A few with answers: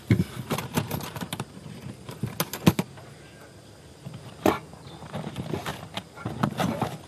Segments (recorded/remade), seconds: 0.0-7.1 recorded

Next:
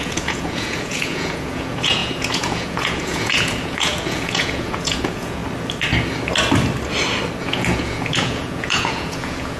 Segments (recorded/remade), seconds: 0.0-5.4 remade; 5.4-7.4 recorded; 7.4-9.6 remade

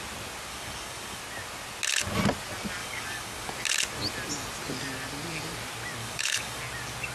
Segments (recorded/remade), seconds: 0.0-0.5 recorded; 0.5-1.2 remade; 1.2-2.8 recorded; 2.8-3.5 remade; 3.5-6.0 recorded; 6.0-6.6 remade; 6.6-7.1 recorded

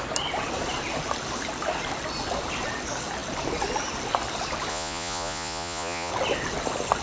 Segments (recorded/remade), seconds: 0.0-4.7 recorded; 4.7-6.1 remade; 6.1-7.0 recorded